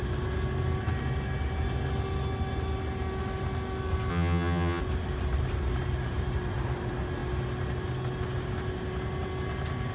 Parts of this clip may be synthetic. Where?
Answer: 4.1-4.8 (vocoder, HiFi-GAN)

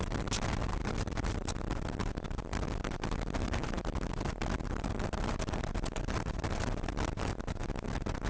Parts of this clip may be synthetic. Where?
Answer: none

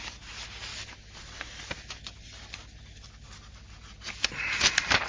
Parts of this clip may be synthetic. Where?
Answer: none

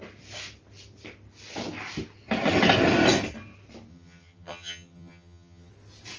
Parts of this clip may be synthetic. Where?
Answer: 3.9-5.7 (vocoder, HiFi-GAN)

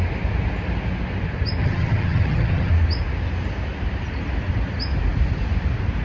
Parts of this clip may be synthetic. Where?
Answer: 1.6-2.7 (vocoder, HiFi-GAN)